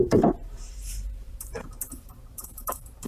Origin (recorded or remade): remade